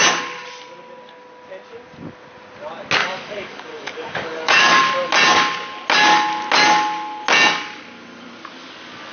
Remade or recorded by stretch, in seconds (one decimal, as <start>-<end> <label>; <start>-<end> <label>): 0.0-3.0 recorded; 3.0-4.8 remade; 4.8-9.1 recorded